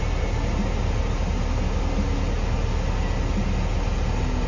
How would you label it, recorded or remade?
recorded